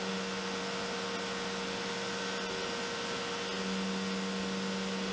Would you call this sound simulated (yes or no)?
no